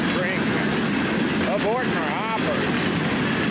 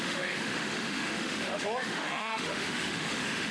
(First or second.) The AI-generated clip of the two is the second